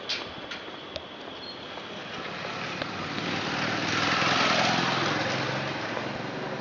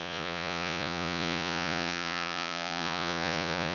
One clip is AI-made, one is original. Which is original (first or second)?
first